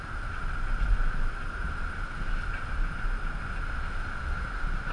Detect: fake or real real